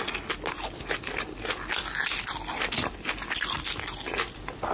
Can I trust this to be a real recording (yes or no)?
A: yes